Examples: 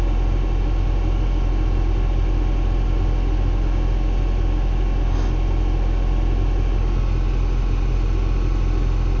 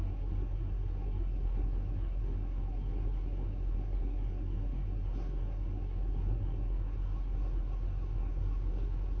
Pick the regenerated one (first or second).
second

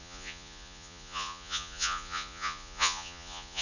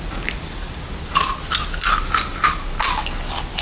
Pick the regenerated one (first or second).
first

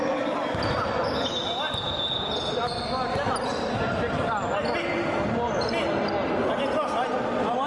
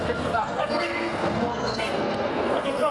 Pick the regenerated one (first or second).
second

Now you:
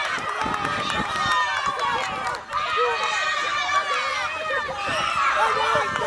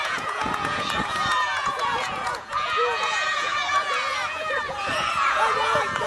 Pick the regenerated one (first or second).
second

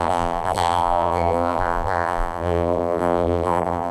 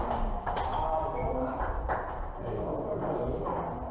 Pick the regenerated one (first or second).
first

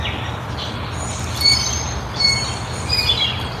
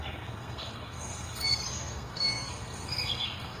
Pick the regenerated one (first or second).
second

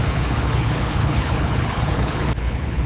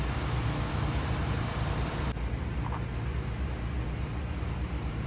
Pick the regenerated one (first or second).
first